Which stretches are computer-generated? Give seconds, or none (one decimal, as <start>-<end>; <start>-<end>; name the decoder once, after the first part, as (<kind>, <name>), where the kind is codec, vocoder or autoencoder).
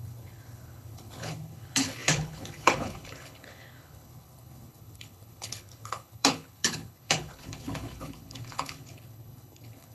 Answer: 0.0-9.9 (codec, HILCodec)